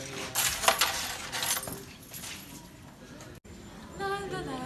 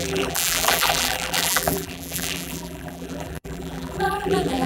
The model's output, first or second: second